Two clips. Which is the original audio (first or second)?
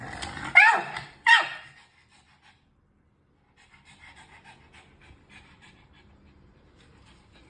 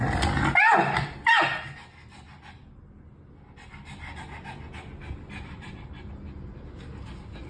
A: second